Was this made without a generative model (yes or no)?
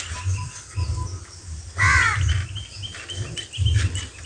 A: yes